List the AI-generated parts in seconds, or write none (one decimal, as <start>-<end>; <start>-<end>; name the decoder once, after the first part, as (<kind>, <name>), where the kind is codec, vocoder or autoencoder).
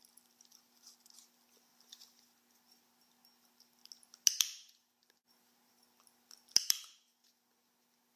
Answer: none